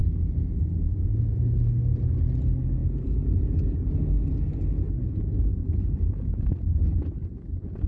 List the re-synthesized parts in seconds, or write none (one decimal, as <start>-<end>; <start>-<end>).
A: 0.0-1.4